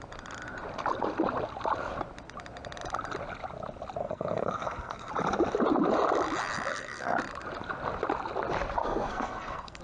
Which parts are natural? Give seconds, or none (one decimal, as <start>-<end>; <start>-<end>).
0.0-4.0; 5.1-6.7; 7.2-8.8